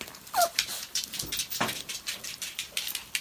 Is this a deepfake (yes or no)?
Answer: no